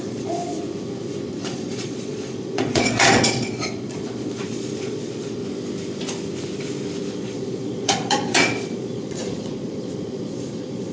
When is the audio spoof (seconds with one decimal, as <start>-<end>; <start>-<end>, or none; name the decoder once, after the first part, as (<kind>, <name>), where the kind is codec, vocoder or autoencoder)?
0.0-0.4 (vocoder, Vocos); 1.3-5.4; 7.1-10.9